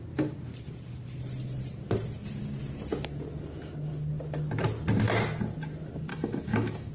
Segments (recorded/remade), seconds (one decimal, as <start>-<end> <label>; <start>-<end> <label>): 0.0-6.1 recorded; 6.1-6.9 remade